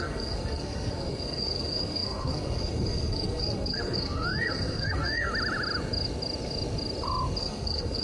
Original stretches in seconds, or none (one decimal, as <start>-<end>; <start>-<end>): 5.3-7.4

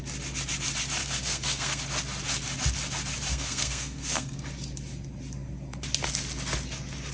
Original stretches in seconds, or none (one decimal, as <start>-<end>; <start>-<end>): 0.0-1.0; 1.8-3.3; 4.4-7.1

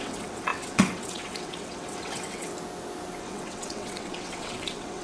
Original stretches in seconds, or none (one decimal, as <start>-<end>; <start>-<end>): 2.5-3.2

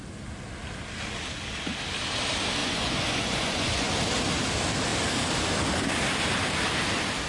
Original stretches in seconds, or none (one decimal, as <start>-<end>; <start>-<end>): 0.0-2.6; 3.9-7.3